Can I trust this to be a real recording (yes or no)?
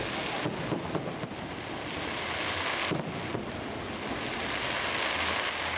yes